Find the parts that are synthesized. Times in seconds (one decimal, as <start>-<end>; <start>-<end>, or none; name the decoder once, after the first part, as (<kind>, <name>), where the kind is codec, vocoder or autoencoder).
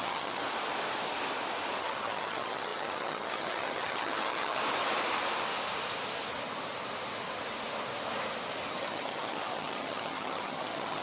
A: 0.0-0.4 (vocoder, HiFi-GAN); 1.8-4.6; 8.7-11.0